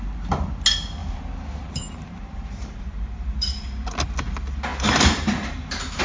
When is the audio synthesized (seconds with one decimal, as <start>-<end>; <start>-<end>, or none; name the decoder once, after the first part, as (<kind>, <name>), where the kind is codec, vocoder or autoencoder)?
1.0-3.6 (vocoder, BigVGAN v2); 4.7-6.0